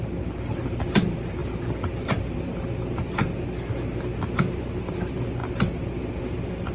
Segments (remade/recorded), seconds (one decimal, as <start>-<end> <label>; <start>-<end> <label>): 0.0-3.2 remade; 3.2-4.4 recorded; 4.4-5.4 remade; 5.4-6.2 recorded; 6.2-6.7 remade